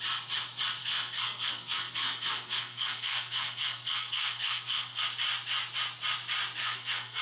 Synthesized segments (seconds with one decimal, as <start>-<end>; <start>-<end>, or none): 0.8-5.0; 6.6-7.2